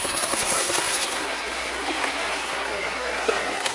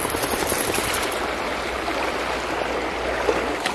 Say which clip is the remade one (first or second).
first